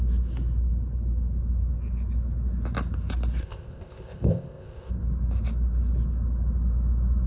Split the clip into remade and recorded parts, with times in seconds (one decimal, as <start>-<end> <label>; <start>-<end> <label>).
0.0-3.4 recorded; 3.4-4.9 remade; 4.9-7.3 recorded